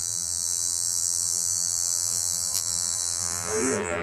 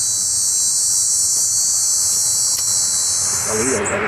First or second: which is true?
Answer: second